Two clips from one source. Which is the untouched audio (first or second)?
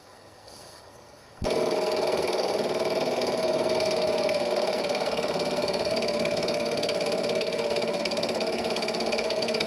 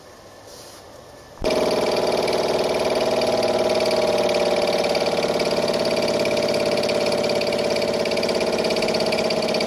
second